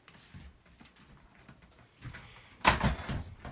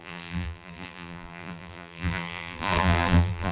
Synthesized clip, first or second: second